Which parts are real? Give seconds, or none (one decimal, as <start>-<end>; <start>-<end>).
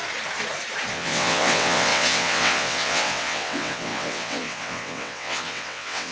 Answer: 0.0-0.9